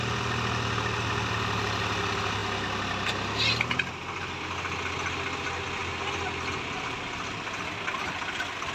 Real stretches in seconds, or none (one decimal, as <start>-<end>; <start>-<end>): 0.0-8.7